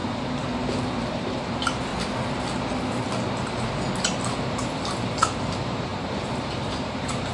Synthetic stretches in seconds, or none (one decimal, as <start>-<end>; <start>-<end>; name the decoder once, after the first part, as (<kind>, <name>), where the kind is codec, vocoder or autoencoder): 1.1-1.9 (vocoder, BigVGAN v2); 4.3-7.3

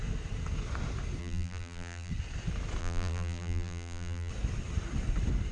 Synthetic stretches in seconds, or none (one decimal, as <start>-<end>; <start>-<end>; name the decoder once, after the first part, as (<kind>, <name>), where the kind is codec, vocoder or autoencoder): 1.2-2.1 (vocoder, BigVGAN v2); 2.8-4.3

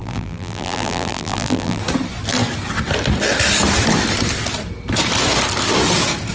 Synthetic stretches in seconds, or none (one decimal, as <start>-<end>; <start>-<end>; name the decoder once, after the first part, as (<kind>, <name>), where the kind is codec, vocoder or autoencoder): 0.0-1.8 (vocoder, BigVGAN v2)

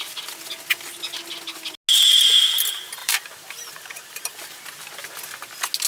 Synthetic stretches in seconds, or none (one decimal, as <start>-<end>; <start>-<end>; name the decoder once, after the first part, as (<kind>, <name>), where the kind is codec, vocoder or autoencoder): 3.0-4.3 (vocoder, BigVGAN v2)

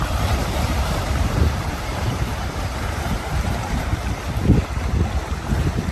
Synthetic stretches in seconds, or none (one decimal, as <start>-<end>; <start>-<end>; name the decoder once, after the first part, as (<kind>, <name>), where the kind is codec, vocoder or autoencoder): 0.4-3.9 (vocoder, BigVGAN v2)

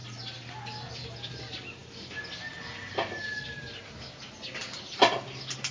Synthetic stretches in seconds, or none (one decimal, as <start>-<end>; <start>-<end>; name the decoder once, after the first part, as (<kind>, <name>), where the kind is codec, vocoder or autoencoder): none

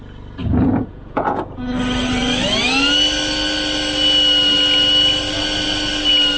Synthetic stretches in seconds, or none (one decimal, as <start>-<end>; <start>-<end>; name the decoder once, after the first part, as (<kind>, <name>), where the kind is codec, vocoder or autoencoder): 0.4-1.4 (vocoder, Vocos)